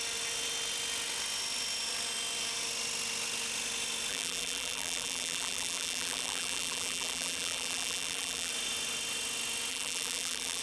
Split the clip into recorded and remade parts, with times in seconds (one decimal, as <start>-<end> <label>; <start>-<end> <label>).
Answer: 0.0-4.1 recorded; 4.1-8.5 remade; 8.5-9.7 recorded; 9.7-10.6 remade